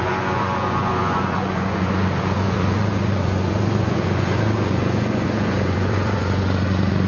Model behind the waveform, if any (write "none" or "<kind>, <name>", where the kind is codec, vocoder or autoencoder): vocoder, Vocos